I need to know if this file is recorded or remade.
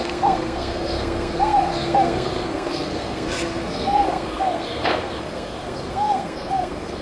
remade